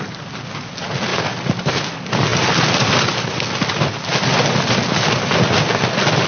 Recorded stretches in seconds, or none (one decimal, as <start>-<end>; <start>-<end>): 0.0-6.3